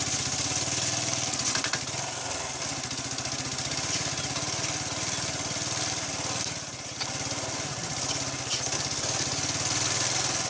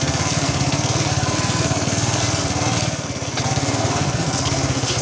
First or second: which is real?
first